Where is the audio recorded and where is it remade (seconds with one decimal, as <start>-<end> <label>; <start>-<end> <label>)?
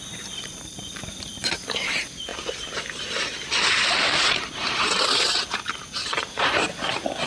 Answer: 0.0-2.3 remade; 2.3-4.3 recorded; 4.3-7.3 remade